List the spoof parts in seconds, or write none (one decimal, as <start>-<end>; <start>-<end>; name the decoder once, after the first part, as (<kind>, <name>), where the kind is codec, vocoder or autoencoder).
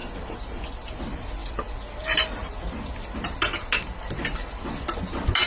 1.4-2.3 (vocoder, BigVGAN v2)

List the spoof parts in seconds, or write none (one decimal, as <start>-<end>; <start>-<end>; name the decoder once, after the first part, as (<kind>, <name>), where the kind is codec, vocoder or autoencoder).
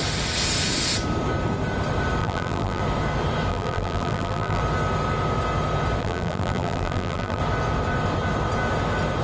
2.2-2.8 (vocoder, BigVGAN v2); 3.5-4.6; 6.0-7.4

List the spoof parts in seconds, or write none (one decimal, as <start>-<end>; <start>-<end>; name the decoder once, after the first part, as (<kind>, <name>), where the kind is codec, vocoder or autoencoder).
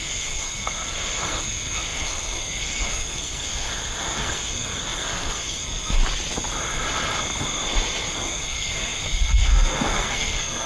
0.0-6.0 (codec, SNAC); 8.1-10.7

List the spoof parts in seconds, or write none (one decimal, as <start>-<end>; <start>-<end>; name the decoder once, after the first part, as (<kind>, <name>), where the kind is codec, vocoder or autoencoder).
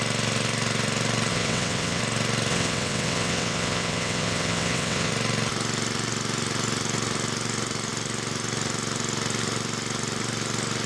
1.3-2.0 (vocoder, WaveNeXt); 2.5-5.1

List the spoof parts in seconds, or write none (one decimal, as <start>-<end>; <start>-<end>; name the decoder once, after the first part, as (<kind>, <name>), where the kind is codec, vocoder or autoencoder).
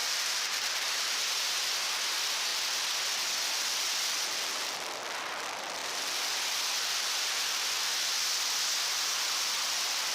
0.0-1.9 (vocoder, BigVGAN v2)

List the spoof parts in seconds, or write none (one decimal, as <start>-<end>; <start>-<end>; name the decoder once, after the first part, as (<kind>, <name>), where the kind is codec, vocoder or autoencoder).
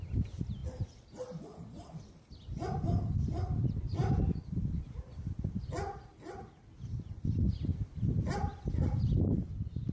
none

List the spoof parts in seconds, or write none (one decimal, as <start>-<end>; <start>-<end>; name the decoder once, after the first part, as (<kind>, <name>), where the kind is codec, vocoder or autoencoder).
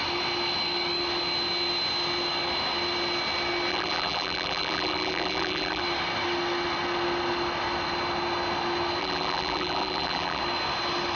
3.7-5.8 (vocoder, BigVGAN v2); 9.0-10.4